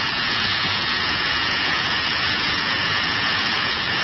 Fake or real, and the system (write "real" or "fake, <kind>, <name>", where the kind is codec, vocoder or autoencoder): fake, vocoder, Vocos